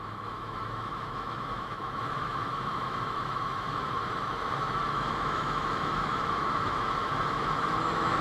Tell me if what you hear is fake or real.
fake